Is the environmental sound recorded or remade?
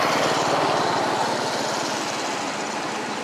recorded